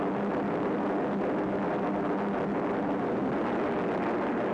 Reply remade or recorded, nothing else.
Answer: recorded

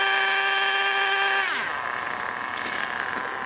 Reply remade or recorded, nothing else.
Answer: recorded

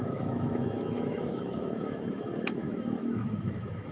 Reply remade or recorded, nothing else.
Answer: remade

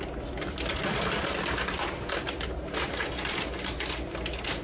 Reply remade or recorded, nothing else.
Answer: recorded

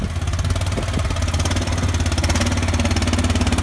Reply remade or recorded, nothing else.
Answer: recorded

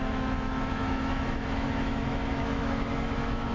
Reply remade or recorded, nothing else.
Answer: remade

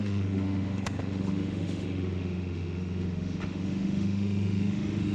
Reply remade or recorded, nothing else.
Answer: remade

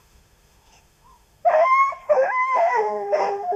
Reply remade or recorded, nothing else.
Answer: remade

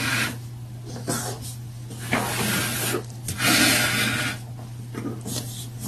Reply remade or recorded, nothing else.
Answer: recorded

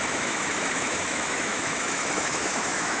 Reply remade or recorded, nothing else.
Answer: remade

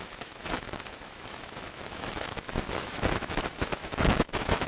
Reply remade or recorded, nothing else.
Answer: remade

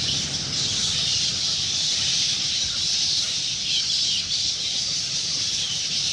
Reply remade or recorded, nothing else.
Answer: recorded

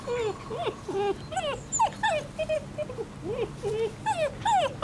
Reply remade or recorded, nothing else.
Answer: recorded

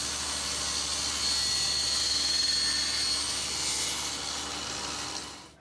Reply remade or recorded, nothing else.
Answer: recorded